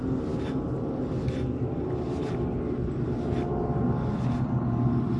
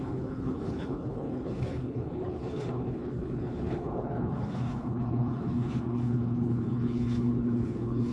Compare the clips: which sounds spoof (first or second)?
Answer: second